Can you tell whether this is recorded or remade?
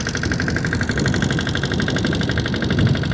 recorded